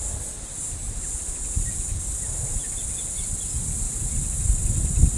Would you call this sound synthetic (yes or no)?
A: no